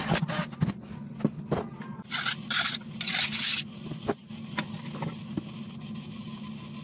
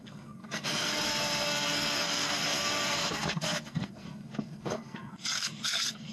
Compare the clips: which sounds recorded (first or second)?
first